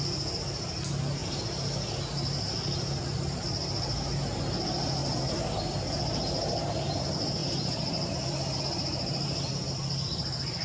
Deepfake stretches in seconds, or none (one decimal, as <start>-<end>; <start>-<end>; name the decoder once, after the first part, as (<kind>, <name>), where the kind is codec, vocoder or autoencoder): 5.0-7.0 (vocoder, BigVGAN v2); 7.4-8.6